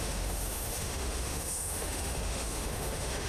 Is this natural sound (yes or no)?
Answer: no